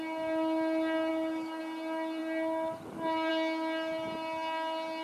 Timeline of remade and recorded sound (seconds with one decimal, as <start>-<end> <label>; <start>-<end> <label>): 0.0-1.1 recorded; 1.1-1.6 remade; 1.6-5.0 recorded